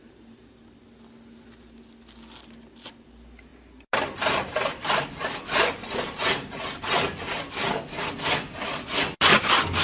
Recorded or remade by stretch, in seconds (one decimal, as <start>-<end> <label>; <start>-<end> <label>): 0.0-9.8 recorded